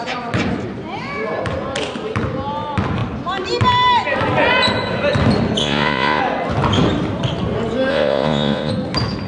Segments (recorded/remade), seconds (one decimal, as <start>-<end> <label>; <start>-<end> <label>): 0.0-5.6 recorded; 5.6-6.2 remade; 6.2-7.9 recorded; 7.9-8.7 remade; 8.7-9.3 recorded